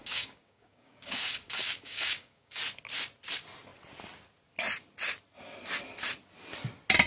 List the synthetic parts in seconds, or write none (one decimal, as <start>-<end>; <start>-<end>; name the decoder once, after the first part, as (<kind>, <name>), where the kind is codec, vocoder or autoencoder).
0.0-2.6 (codec, DAC)